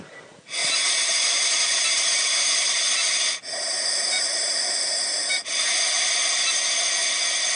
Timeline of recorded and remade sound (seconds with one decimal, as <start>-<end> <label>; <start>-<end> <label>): 0.0-0.6 recorded; 0.6-2.7 remade; 2.7-5.3 recorded; 5.3-6.1 remade; 6.1-7.6 recorded